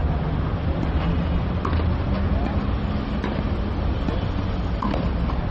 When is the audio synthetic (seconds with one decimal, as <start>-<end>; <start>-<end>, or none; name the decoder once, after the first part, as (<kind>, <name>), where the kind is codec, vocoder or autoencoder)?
none